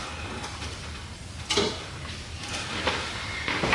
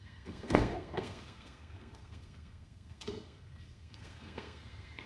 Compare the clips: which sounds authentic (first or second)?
first